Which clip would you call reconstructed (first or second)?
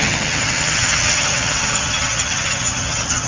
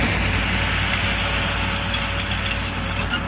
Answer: first